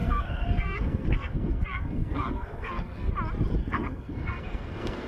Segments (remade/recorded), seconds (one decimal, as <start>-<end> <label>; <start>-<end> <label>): 0.0-3.1 remade; 3.1-3.6 recorded; 3.6-5.1 remade